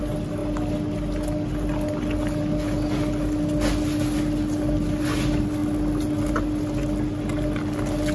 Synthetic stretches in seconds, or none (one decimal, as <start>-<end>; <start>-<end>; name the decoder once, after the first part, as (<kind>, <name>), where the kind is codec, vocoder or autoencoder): none